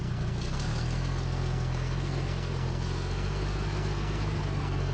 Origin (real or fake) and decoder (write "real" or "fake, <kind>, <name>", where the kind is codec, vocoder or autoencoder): fake, codec, SNAC